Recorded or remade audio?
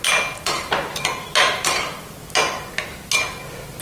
recorded